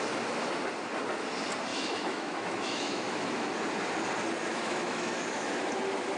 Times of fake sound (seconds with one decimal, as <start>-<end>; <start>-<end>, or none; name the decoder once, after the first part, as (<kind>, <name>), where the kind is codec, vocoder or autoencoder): 1.7-3.5 (autoencoder, DAC-VAE); 4.5-5.6